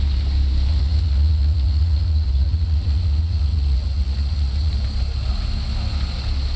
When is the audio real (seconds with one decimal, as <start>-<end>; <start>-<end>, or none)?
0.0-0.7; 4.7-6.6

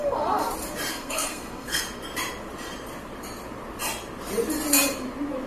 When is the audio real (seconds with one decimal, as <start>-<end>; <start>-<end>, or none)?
0.5-0.9; 1.8-5.5

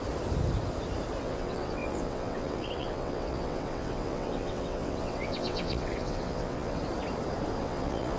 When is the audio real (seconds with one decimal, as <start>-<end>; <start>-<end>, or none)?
0.0-1.2; 6.8-7.6

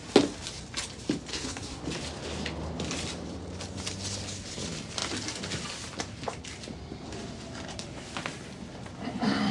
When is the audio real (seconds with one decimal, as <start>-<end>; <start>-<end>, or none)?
0.0-1.3; 1.8-9.5

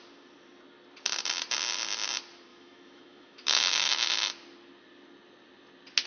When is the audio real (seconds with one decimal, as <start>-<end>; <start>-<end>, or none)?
0.0-2.5; 3.9-6.1